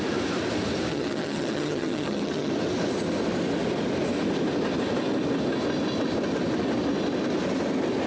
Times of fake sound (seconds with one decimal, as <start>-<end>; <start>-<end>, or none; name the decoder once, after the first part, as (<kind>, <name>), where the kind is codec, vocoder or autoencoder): 0.9-2.5 (vocoder, HiFi-GAN)